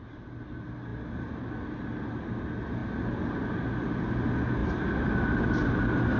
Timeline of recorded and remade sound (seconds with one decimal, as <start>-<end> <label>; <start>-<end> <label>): 0.0-6.2 recorded